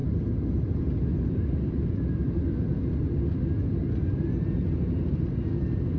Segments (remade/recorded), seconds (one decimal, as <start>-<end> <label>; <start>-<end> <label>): 0.0-6.0 recorded